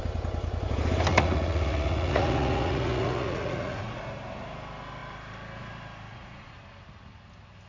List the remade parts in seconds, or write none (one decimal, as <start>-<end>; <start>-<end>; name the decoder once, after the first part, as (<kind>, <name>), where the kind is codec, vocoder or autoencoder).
1.1-4.0 (vocoder, Vocos); 6.1-6.6